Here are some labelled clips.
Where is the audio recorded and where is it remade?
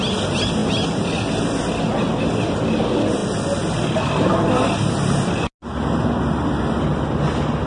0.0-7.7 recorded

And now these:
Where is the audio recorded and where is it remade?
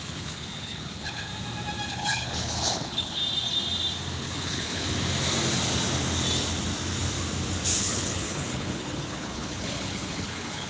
0.0-1.3 remade; 1.3-1.9 recorded; 1.9-3.2 remade; 3.2-4.2 recorded; 4.2-4.8 remade; 4.8-7.8 recorded; 7.8-10.7 remade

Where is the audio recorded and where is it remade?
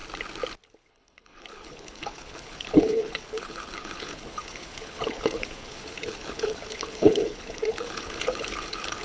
0.0-0.9 recorded; 0.9-9.0 remade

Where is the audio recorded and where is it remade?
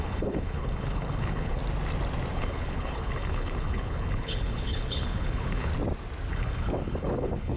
0.0-1.6 remade; 1.6-2.3 recorded; 2.3-5.7 remade; 5.7-6.3 recorded; 6.3-7.6 remade